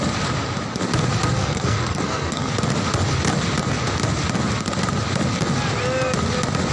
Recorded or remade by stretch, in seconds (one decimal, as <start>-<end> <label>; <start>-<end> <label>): 0.0-1.4 recorded; 1.4-2.5 remade; 2.5-6.7 recorded